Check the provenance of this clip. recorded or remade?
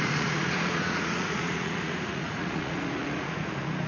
remade